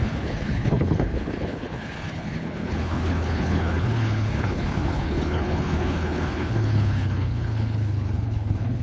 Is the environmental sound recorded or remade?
remade